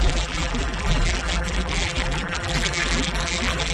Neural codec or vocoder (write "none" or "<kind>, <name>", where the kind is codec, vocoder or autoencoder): vocoder, BigVGAN v2